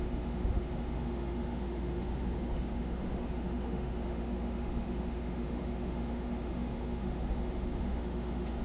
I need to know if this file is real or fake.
fake